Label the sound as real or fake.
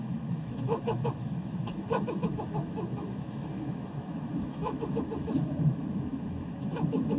fake